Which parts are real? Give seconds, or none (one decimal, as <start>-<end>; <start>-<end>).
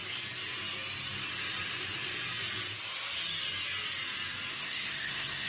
0.0-4.5